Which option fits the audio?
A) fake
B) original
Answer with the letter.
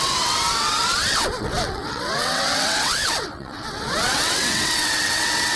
A